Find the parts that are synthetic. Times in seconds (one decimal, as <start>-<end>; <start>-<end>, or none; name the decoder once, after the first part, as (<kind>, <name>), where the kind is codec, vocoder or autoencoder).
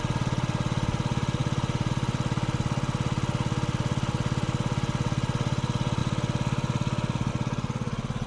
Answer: none